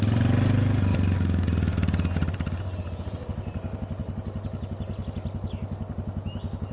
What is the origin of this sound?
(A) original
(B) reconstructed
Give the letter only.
A